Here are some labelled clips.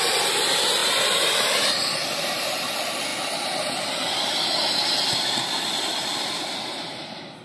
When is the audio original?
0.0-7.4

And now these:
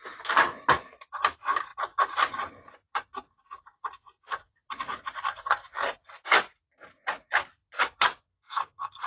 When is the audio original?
0.0-8.3

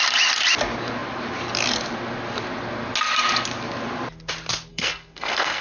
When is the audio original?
0.0-4.7

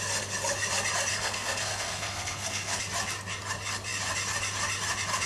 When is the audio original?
0.0-1.1; 2.8-5.3